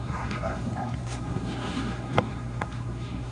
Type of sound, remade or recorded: remade